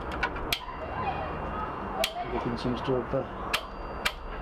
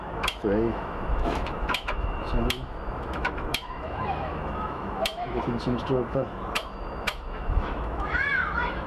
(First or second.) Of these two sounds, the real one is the first